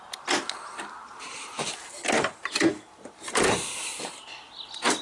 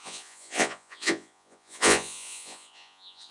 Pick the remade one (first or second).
second